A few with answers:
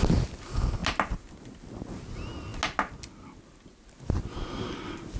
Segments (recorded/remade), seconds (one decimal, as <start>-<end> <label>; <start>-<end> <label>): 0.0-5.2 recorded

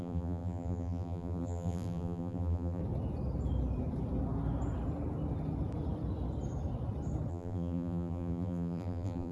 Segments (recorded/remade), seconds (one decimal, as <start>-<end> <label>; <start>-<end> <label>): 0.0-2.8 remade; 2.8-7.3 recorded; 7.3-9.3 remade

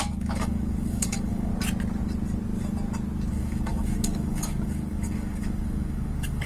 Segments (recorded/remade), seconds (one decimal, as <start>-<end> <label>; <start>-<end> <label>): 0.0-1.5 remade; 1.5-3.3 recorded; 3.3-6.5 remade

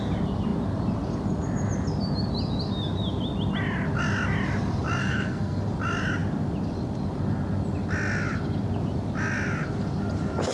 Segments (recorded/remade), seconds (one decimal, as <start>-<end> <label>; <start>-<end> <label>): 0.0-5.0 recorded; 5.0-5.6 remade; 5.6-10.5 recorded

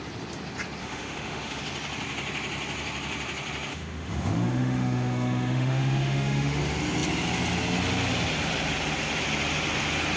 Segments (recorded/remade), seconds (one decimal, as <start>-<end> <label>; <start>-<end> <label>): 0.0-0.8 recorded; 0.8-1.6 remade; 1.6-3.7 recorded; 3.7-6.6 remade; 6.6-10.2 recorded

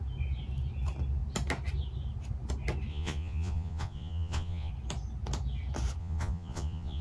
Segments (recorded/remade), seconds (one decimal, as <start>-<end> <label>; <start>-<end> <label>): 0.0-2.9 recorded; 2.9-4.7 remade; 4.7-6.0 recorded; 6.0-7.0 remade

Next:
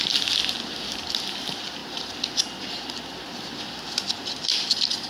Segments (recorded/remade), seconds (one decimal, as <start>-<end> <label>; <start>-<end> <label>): 0.0-5.1 recorded